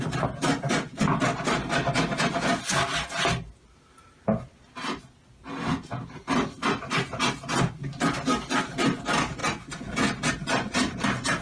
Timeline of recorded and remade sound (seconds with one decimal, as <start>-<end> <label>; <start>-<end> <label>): 0.0-11.4 recorded